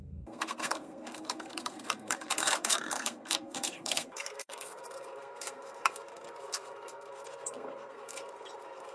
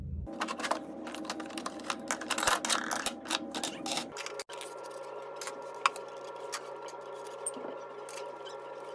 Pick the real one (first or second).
second